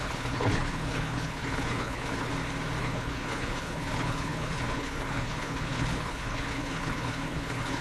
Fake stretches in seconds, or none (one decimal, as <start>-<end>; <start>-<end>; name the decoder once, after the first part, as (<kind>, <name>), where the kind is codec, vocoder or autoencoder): 0.0-2.3 (codec, HILCodec); 2.8-7.8